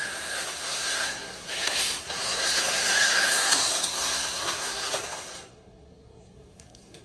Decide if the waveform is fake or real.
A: fake